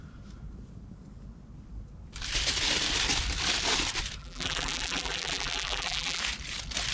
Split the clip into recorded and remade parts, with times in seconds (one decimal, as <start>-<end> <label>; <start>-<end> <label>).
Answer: 0.0-4.2 recorded; 4.2-6.2 remade; 6.2-6.9 recorded